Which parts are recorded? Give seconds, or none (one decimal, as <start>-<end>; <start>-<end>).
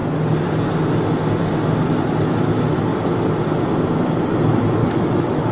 0.0-4.8